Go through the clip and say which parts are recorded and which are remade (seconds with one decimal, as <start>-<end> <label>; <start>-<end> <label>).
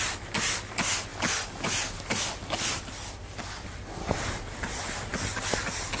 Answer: 0.0-6.0 recorded